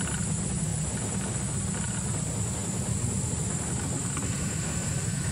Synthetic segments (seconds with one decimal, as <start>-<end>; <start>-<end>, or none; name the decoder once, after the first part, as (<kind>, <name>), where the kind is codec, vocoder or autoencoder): 0.0-0.7 (vocoder, BigVGAN v2); 2.2-2.6; 3.2-5.3